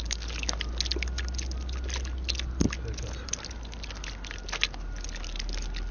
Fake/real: real